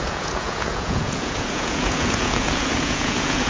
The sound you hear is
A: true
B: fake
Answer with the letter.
B